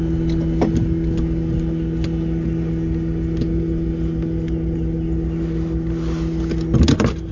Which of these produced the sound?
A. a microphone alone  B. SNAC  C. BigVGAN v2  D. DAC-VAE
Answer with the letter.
A